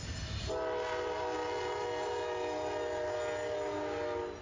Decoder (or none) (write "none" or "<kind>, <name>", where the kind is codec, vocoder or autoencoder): none